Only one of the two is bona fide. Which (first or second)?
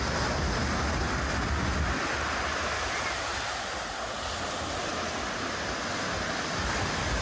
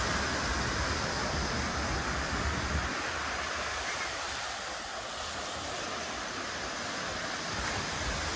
first